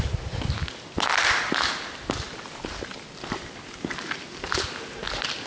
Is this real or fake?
real